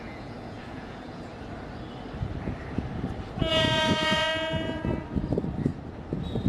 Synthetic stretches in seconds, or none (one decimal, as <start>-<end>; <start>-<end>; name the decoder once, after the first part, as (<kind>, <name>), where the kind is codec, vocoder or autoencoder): 0.0-1.3 (vocoder, Vocos); 3.5-4.3